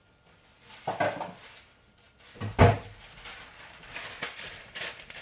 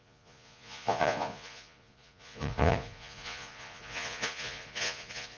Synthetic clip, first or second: second